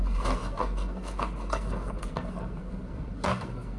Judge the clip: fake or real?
fake